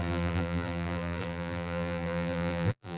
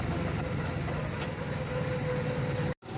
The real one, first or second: second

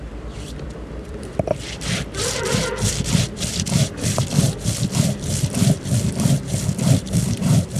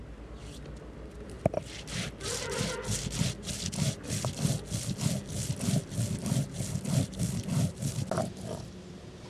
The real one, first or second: second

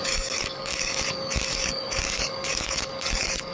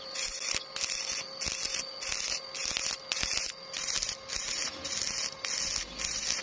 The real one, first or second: second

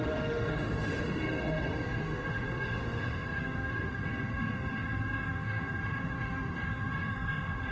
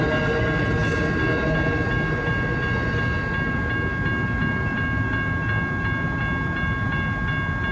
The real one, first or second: second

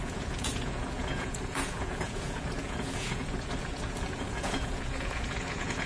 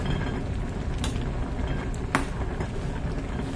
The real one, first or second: second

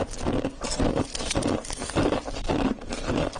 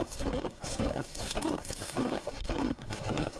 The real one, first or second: first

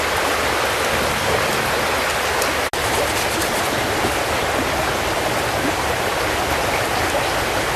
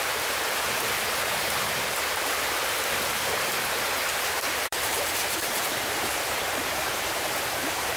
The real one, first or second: first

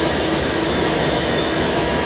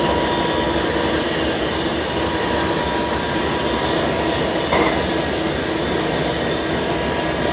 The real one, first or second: second